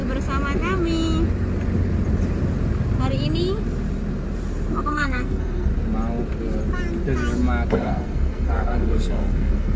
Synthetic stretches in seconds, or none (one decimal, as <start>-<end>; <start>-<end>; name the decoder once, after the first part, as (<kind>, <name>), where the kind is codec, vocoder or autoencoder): 4.9-5.7 (codec, SNAC); 7.7-9.8